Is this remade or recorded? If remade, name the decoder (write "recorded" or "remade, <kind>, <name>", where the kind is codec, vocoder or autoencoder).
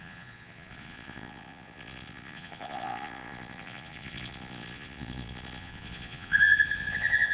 remade, vocoder, Vocos